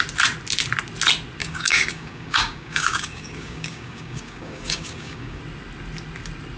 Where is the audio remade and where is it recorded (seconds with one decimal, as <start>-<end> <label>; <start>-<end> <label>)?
0.0-1.4 recorded; 1.4-5.4 remade; 5.4-6.6 recorded